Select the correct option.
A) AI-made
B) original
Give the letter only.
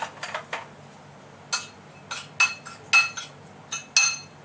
B